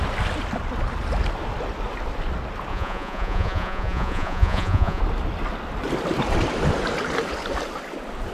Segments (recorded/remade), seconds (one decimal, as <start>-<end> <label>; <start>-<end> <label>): 0.0-2.7 recorded; 2.7-5.0 remade; 5.0-8.3 recorded